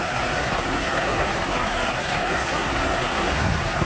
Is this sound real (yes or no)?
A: no